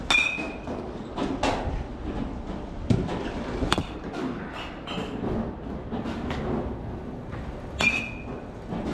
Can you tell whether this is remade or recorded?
recorded